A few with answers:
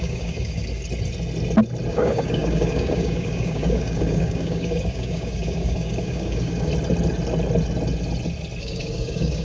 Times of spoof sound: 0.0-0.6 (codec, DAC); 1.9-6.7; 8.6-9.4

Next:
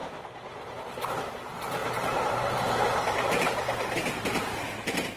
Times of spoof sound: 1.8-4.4 (vocoder, BigVGAN v2)

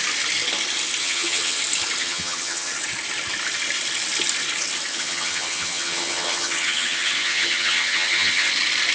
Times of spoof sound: 1.0-1.6 (vocoder, HiFi-GAN); 2.0-2.7; 4.9-8.5

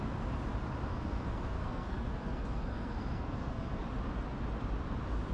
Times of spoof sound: 0.9-3.8 (codec, SNAC)

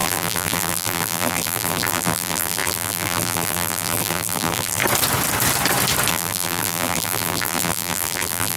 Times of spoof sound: 0.0-4.8 (vocoder, BigVGAN v2); 6.1-8.6

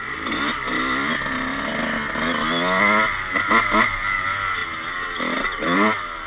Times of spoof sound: none

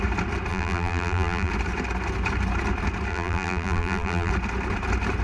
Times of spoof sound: 0.5-1.5 (vocoder, BigVGAN v2); 3.1-4.3

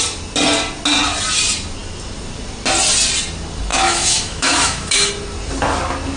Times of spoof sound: 3.7-5.1 (autoencoder, DAC-VAE)